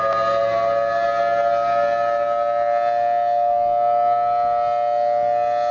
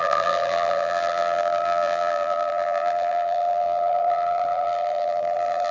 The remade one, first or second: second